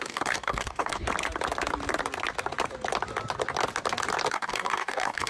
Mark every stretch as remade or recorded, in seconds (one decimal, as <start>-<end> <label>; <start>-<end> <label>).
0.0-1.1 remade; 1.1-4.3 recorded; 4.3-5.3 remade